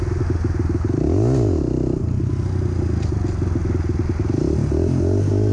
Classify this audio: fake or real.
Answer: real